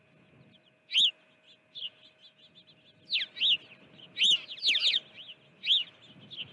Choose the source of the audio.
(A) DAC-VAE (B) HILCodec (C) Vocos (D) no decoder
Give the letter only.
D